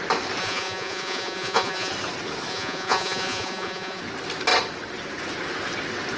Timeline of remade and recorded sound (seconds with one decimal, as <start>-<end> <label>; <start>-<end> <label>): 0.0-0.4 recorded; 0.4-1.9 remade; 1.9-2.5 recorded; 2.5-4.0 remade; 4.0-6.2 recorded

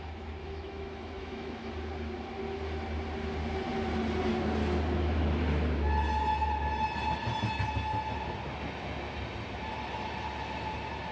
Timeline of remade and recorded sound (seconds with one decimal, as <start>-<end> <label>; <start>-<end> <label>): 0.0-0.4 recorded; 0.4-1.7 remade; 1.7-11.1 recorded

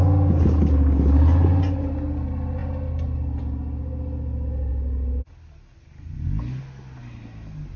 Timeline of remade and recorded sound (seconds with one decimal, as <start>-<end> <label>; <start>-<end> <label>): 0.0-7.8 recorded

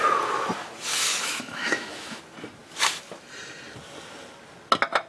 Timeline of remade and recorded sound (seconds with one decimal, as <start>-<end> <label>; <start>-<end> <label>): 0.0-1.1 recorded; 1.1-2.2 remade; 2.2-5.1 recorded

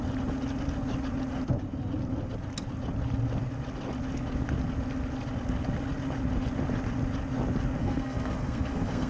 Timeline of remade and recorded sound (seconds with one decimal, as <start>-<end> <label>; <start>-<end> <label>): 0.0-7.8 recorded; 7.8-9.1 remade

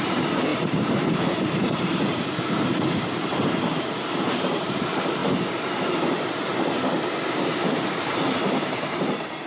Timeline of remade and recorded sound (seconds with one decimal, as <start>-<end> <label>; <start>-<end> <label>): 0.0-5.2 remade; 5.2-5.9 recorded; 5.9-6.5 remade; 6.5-7.2 recorded; 7.2-9.5 remade